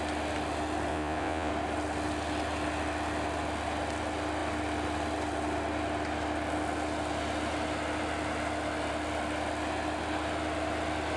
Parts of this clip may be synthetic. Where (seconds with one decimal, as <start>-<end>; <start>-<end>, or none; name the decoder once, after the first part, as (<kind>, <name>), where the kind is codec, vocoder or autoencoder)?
0.9-1.5 (vocoder, Vocos)